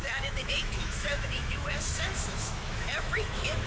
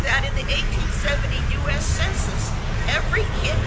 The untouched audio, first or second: second